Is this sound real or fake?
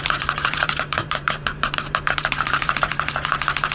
fake